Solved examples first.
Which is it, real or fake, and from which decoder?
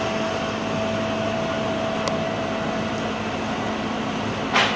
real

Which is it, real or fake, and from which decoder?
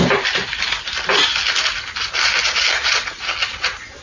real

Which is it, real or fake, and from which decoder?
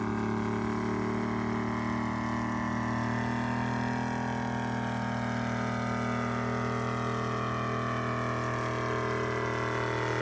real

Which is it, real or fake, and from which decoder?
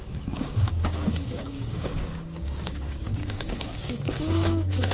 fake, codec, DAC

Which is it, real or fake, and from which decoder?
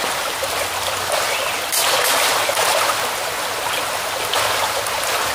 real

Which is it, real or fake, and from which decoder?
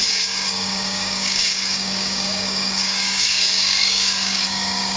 fake, codec, DAC